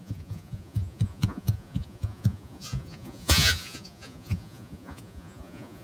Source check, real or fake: fake